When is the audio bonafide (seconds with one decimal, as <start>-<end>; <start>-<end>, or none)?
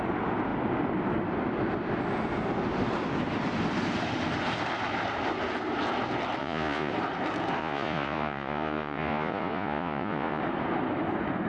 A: 0.0-6.4; 6.9-7.6; 10.4-11.5